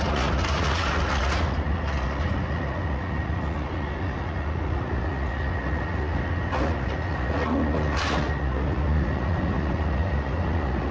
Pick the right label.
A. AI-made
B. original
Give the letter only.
A